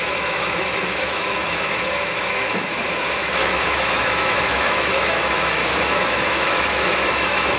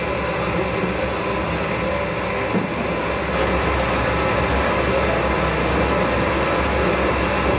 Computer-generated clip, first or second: first